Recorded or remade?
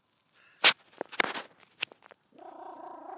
recorded